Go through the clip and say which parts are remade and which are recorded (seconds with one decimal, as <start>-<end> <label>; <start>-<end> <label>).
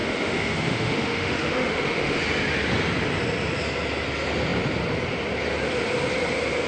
0.0-2.2 remade; 2.2-6.7 recorded